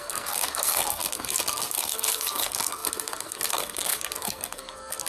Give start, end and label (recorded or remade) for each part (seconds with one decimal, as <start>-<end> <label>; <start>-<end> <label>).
0.0-5.1 remade